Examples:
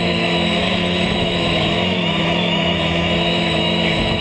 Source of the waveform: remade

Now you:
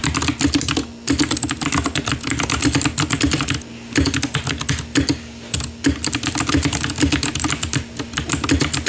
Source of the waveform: recorded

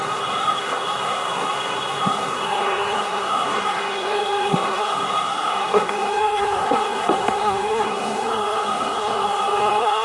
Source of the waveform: remade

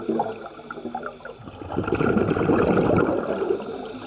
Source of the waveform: recorded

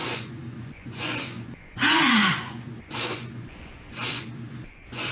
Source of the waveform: remade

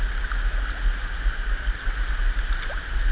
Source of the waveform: recorded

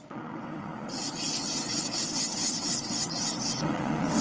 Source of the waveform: remade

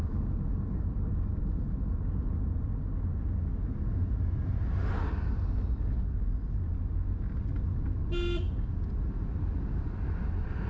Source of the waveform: recorded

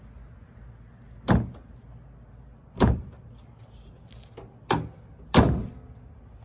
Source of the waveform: recorded